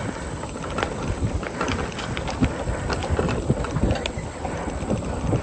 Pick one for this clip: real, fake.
real